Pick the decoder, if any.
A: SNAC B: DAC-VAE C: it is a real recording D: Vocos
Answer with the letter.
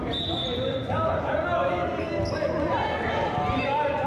C